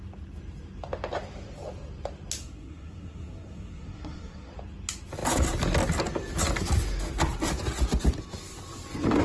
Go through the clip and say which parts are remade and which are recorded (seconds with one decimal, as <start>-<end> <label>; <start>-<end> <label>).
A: 0.0-2.4 recorded; 2.4-4.5 remade; 4.5-9.2 recorded